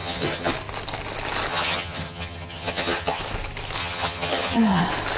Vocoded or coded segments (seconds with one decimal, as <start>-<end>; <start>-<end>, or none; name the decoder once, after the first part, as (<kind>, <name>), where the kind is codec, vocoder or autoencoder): 0.0-0.5 (vocoder, HiFi-GAN); 1.5-3.2; 3.8-4.8